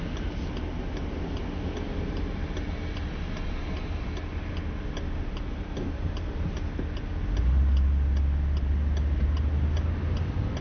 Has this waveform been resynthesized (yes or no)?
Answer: no